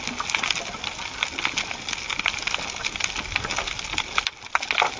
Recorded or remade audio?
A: recorded